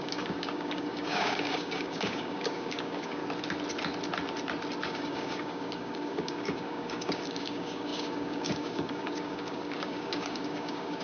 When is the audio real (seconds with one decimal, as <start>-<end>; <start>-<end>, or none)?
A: 3.2-4.9